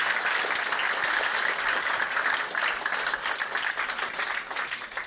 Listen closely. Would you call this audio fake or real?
real